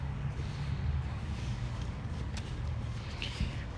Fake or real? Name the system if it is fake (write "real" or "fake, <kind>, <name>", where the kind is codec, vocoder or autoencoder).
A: fake, codec, DAC